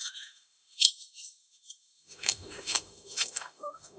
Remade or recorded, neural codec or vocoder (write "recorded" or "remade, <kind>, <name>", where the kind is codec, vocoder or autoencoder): remade, autoencoder, DAC-VAE